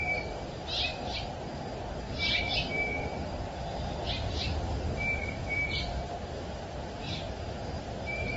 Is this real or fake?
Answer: real